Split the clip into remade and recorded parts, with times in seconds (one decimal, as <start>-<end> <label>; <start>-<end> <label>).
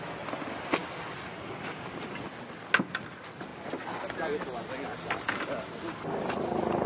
0.0-6.9 recorded